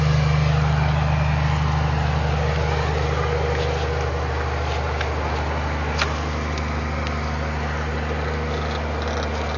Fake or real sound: real